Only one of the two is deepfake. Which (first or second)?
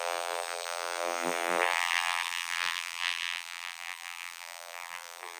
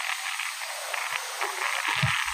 first